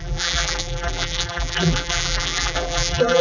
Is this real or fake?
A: fake